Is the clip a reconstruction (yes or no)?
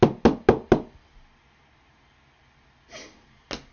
no